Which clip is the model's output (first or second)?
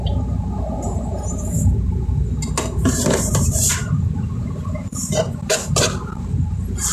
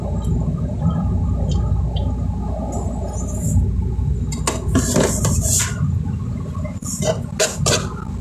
first